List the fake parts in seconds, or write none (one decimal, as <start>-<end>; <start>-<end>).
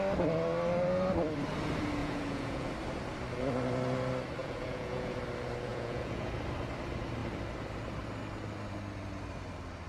2.0-2.7; 4.4-5.2; 5.7-6.3